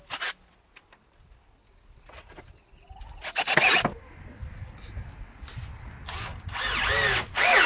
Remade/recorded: recorded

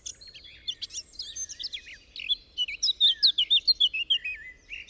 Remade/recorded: recorded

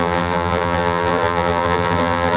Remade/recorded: remade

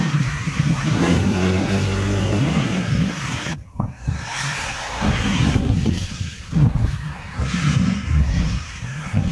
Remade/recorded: remade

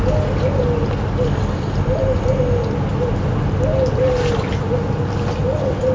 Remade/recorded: recorded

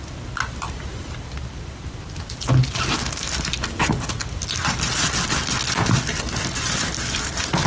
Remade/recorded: recorded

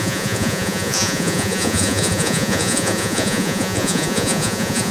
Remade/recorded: remade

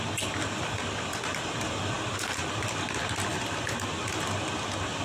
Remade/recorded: recorded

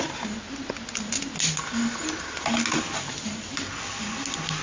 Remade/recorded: recorded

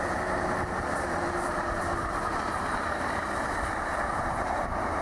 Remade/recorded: remade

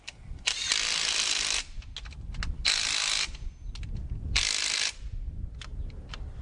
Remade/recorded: recorded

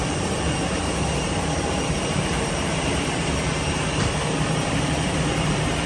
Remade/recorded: remade